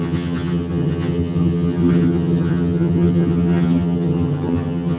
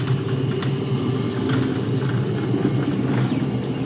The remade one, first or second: first